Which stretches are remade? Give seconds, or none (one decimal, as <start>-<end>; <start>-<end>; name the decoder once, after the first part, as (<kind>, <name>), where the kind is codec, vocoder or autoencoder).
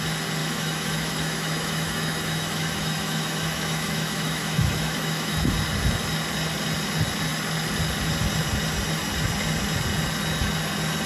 0.4-5.5 (autoencoder, DAC-VAE)